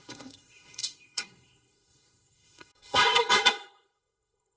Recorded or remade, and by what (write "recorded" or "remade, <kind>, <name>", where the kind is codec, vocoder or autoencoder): remade, codec, SNAC